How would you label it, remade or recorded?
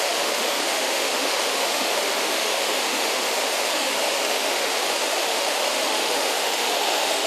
remade